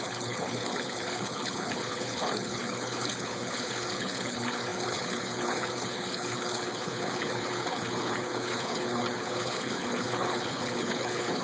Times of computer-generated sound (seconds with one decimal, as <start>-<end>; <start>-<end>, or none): 0.0-11.4